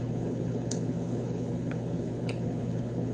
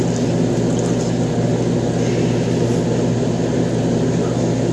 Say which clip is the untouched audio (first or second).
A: second